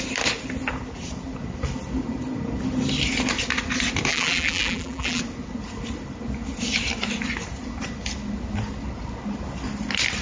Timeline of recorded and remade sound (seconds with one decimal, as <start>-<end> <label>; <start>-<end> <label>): 0.0-4.1 recorded; 4.1-5.2 remade; 5.2-10.2 recorded